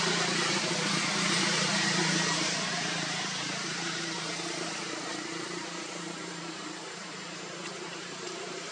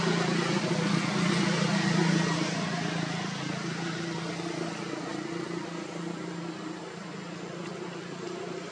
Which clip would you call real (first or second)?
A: second